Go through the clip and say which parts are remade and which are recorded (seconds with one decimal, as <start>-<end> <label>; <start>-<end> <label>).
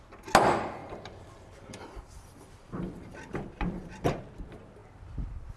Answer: 0.0-0.8 recorded; 0.8-4.2 remade; 4.2-5.6 recorded